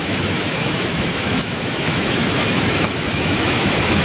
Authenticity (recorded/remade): remade